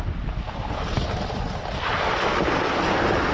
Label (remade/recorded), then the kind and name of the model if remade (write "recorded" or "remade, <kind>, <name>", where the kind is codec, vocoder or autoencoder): recorded